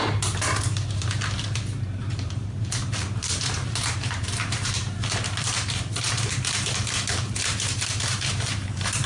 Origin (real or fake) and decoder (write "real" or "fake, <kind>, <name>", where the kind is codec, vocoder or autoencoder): fake, vocoder, BigVGAN v2